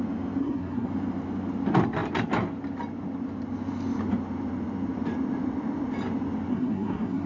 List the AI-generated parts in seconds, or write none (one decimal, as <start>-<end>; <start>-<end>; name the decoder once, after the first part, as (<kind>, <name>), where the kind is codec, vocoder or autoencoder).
0.4-0.9 (codec, SNAC); 6.5-7.3